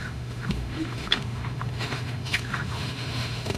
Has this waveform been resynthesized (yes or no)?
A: yes